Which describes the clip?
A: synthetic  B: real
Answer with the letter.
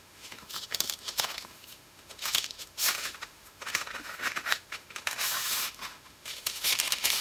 A